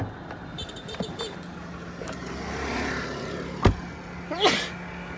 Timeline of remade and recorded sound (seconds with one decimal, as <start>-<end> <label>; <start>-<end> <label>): 0.0-0.8 recorded; 0.8-3.9 remade; 3.9-5.2 recorded